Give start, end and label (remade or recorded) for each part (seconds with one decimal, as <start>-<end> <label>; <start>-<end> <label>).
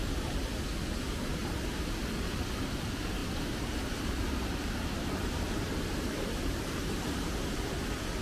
0.0-1.4 recorded; 1.4-2.2 remade; 2.2-3.2 recorded; 3.2-7.7 remade; 7.7-8.2 recorded